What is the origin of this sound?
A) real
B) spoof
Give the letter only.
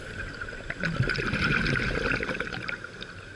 A